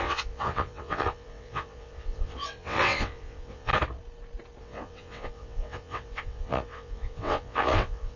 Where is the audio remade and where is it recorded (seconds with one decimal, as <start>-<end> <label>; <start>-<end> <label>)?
0.0-3.7 remade; 3.7-4.6 recorded; 4.6-8.2 remade